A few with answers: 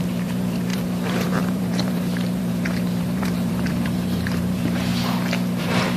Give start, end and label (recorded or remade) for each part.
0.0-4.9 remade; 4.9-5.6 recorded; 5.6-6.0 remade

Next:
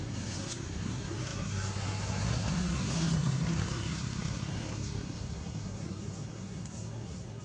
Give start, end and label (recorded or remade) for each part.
0.0-7.4 remade

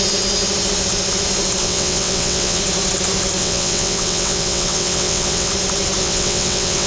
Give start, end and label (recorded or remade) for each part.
0.0-1.6 recorded; 1.6-2.6 remade; 2.6-3.4 recorded; 3.4-5.5 remade; 5.5-6.0 recorded; 6.0-6.9 remade

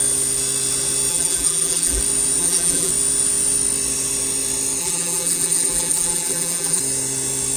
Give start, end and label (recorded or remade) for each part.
0.0-1.1 recorded; 1.1-2.0 remade; 2.0-2.4 recorded; 2.4-2.9 remade; 2.9-4.8 recorded; 4.8-6.8 remade; 6.8-7.6 recorded

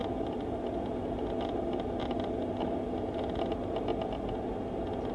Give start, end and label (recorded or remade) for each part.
0.0-5.1 recorded

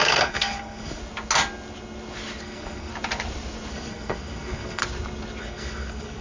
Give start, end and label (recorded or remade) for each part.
0.0-1.0 remade; 1.0-2.4 recorded; 2.4-2.9 remade; 2.9-3.7 recorded; 3.7-4.8 remade; 4.8-5.4 recorded; 5.4-6.2 remade